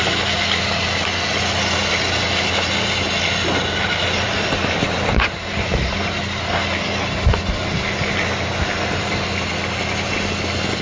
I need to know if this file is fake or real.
real